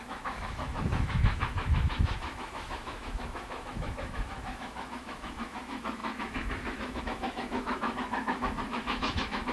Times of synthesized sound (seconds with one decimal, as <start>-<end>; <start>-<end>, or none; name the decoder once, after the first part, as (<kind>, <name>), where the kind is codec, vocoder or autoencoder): 0.0-9.5 (autoencoder, DAC-VAE)